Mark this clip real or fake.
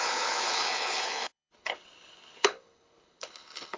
fake